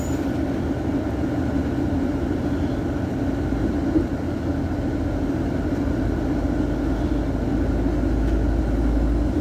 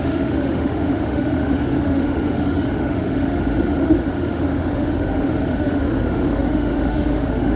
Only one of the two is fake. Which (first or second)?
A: second